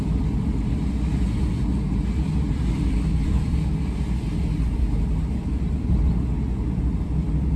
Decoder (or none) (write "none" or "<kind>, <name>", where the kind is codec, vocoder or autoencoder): none